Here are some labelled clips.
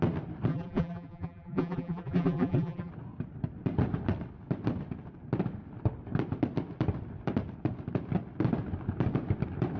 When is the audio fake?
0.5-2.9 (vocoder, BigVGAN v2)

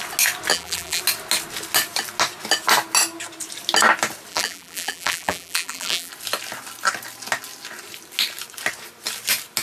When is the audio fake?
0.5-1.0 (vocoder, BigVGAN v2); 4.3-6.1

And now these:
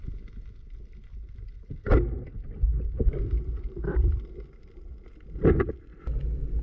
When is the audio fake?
none